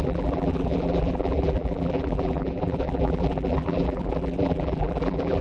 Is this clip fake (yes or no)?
yes